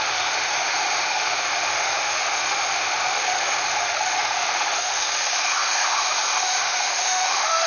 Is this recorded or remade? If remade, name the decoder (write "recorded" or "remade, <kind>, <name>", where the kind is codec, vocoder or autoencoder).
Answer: remade, autoencoder, DAC-VAE